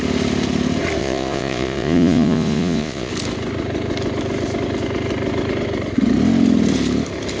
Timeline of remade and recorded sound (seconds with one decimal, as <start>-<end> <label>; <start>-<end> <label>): 0.0-1.0 recorded; 1.0-3.1 remade; 3.1-7.4 recorded